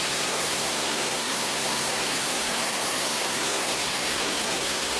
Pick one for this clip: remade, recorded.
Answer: remade